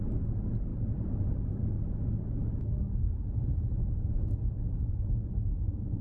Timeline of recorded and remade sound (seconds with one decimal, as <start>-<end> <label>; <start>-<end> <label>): 0.0-6.0 recorded